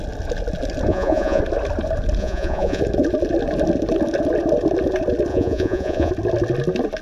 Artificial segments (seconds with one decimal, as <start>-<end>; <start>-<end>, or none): 0.9-1.4; 2.2-2.8; 5.3-6.1